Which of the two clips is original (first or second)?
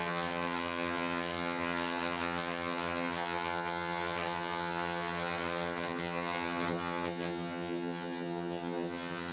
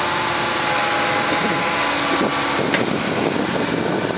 second